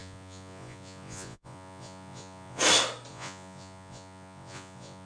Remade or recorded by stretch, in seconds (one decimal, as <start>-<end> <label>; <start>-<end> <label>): 0.0-2.6 remade; 2.6-3.1 recorded; 3.1-5.1 remade